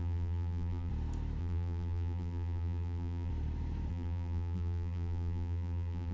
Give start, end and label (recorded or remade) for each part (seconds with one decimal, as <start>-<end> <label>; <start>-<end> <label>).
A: 0.0-0.9 remade; 0.9-1.4 recorded; 1.4-3.3 remade; 3.3-3.9 recorded; 3.9-6.1 remade